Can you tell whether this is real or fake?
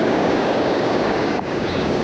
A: fake